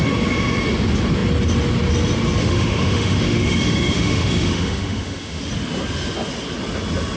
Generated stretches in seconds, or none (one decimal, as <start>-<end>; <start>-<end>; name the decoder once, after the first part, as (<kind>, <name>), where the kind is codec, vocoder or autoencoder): 2.4-5.4 (autoencoder, DAC-VAE)